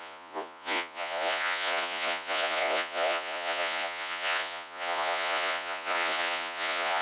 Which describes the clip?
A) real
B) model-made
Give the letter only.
B